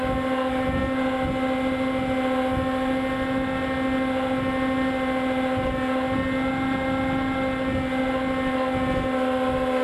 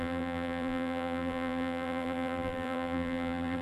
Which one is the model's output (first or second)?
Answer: second